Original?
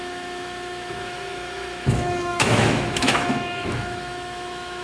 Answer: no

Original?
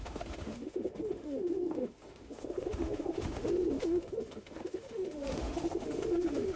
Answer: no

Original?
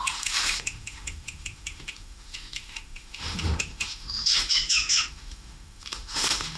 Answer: no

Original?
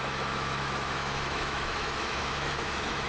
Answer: no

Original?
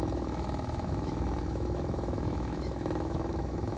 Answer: no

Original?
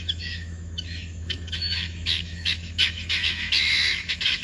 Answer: no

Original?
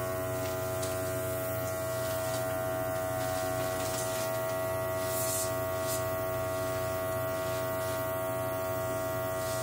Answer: yes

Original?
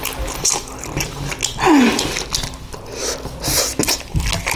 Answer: yes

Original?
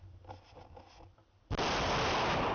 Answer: yes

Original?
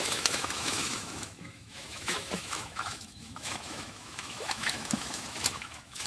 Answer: no